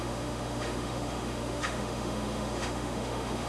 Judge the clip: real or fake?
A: fake